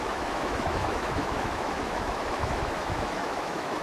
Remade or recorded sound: remade